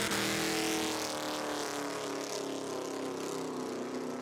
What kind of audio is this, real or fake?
real